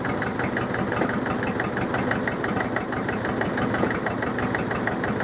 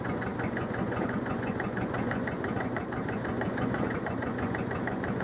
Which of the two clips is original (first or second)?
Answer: first